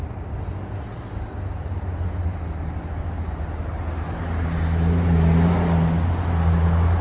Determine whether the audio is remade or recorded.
recorded